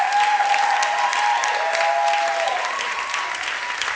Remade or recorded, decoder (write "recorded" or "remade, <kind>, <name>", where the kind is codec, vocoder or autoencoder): recorded